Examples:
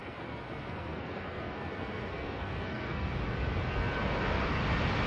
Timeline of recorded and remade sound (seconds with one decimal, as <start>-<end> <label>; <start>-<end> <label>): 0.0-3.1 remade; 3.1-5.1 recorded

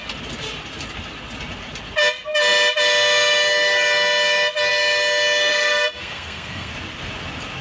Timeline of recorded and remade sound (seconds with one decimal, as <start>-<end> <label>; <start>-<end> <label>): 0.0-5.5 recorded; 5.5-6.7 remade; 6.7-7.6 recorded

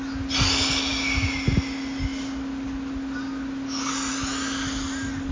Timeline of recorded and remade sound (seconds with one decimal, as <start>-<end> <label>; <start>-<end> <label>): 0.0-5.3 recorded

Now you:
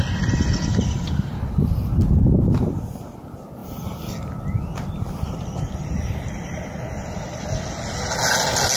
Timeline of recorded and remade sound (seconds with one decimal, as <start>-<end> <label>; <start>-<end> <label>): 0.0-8.8 recorded